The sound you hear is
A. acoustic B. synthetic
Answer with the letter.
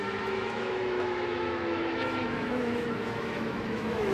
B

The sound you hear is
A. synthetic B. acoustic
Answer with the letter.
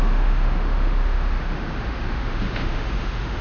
A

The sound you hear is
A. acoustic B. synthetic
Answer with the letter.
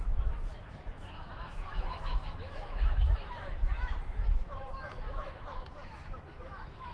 B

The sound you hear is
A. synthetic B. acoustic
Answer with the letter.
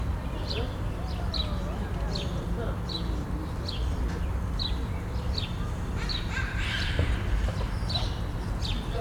B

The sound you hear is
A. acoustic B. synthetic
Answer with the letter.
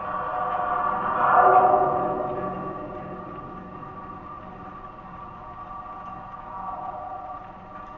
A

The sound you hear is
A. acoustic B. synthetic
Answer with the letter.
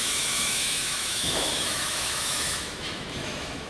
B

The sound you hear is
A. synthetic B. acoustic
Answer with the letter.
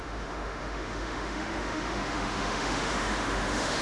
A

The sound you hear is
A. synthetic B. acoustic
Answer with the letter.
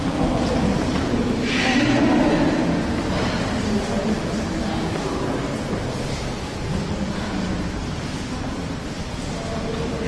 B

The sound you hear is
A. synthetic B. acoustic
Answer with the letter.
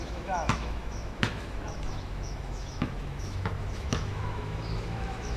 A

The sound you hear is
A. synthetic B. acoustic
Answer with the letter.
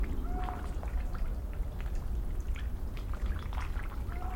B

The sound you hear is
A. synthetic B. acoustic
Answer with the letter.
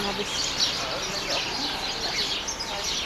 B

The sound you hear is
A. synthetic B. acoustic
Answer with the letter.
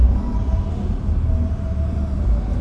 B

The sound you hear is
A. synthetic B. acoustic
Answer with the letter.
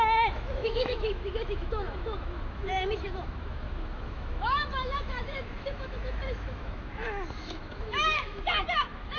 A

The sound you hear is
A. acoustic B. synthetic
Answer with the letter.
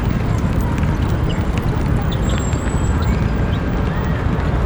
A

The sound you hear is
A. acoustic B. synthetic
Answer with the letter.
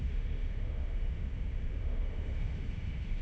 B